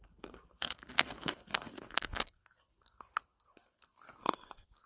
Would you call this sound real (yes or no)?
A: no